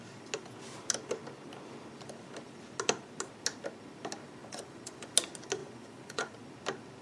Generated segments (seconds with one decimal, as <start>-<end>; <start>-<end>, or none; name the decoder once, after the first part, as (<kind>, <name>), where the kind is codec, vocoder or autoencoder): 4.4-5.1 (vocoder, Vocos); 5.6-6.3